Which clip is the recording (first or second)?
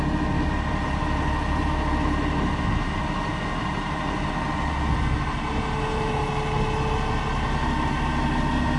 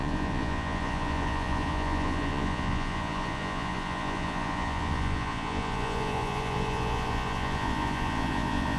first